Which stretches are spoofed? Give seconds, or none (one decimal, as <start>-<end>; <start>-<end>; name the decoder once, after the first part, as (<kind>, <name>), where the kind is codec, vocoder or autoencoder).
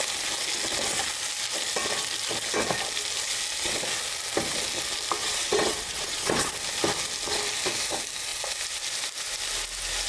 5.2-6.5 (vocoder, WaveNeXt)